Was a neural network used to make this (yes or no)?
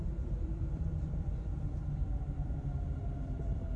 yes